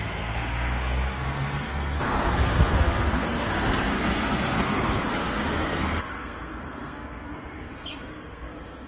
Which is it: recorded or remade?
remade